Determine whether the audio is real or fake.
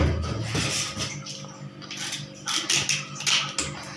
real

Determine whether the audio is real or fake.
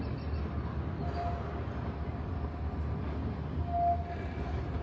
real